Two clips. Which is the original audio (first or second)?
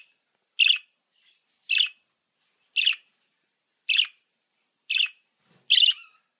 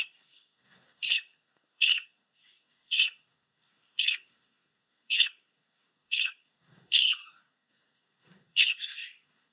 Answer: first